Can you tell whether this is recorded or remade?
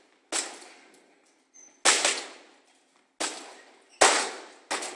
recorded